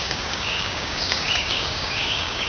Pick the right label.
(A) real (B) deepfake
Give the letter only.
B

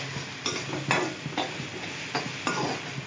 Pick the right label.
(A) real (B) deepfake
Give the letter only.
A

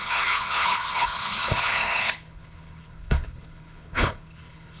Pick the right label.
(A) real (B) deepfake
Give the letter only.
B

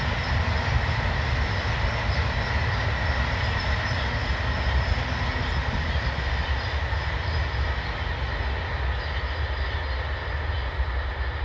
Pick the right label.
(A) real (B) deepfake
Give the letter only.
A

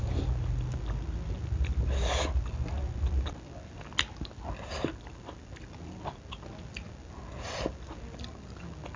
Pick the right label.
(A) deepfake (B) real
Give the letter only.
B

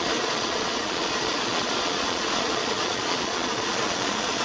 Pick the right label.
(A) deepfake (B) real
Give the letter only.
A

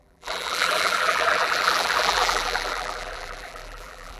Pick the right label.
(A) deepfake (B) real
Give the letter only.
A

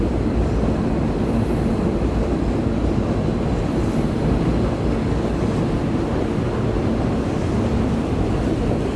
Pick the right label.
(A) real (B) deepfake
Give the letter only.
A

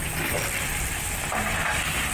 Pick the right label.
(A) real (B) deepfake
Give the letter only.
A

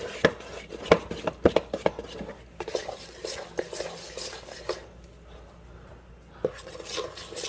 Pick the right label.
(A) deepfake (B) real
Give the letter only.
B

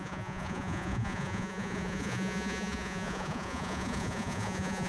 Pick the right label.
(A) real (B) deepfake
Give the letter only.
B